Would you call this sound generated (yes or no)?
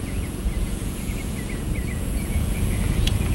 yes